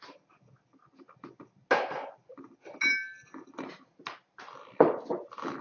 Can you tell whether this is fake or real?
real